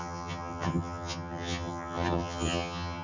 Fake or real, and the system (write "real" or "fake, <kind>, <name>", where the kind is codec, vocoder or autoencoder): fake, vocoder, HiFi-GAN